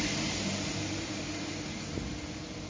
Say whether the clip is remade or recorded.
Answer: recorded